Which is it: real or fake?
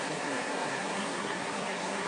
fake